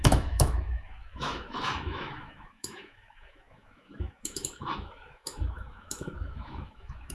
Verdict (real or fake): fake